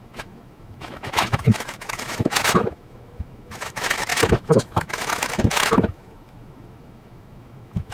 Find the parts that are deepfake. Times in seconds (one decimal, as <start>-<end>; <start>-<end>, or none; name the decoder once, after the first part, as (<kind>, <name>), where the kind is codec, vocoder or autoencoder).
0.0-7.9 (autoencoder, DAC-VAE)